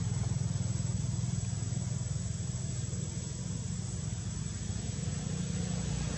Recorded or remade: recorded